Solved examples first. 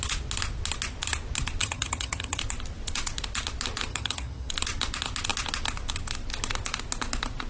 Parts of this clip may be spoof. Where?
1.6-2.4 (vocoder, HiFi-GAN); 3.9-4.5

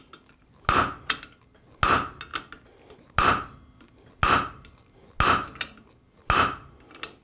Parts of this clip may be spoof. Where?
none

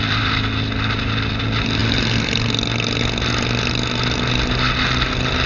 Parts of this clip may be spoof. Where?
none